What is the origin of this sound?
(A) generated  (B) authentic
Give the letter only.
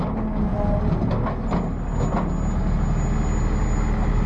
B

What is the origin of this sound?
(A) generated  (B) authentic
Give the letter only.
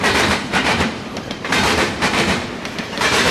A